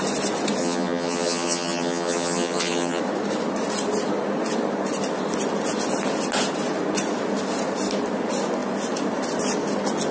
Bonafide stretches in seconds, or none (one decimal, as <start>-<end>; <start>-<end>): 0.0-0.6; 3.0-10.1